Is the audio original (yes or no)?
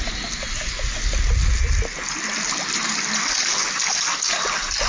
yes